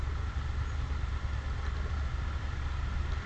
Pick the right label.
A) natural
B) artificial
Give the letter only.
A